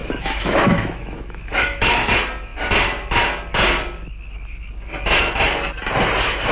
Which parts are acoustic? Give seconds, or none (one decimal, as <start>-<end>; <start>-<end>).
2.1-6.5